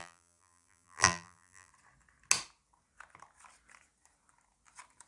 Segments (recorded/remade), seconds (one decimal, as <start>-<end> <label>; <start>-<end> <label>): 0.0-1.7 remade; 1.7-5.1 recorded